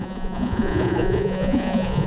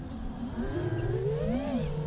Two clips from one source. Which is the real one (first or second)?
second